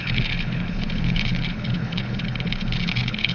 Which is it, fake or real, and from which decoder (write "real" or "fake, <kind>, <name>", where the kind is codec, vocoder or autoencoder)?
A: fake, codec, HILCodec